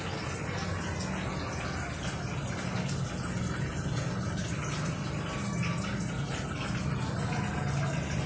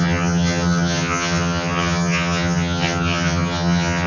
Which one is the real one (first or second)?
first